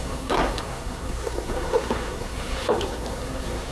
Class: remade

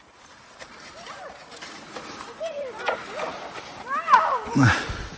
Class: remade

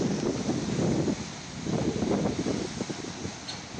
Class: recorded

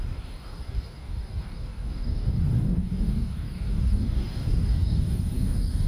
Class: remade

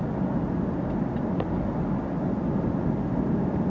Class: recorded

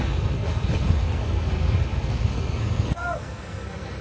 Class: remade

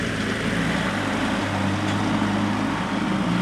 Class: recorded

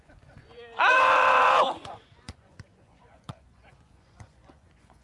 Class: remade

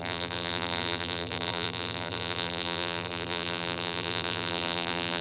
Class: remade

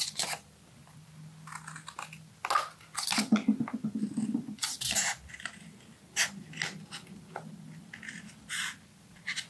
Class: recorded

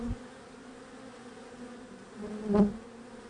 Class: recorded